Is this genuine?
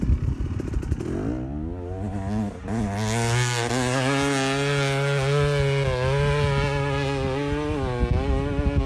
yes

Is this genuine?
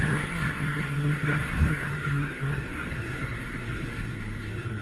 no